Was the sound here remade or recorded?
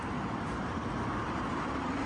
remade